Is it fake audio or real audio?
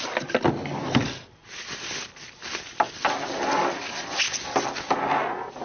real